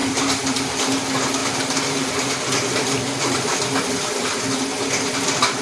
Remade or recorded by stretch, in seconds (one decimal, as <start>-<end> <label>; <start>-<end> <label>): 0.0-0.7 remade; 0.7-5.6 recorded